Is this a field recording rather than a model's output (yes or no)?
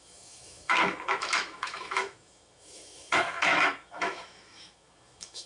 no